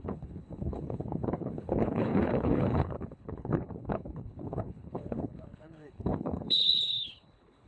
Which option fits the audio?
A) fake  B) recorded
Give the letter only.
A